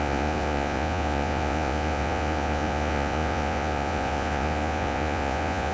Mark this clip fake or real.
fake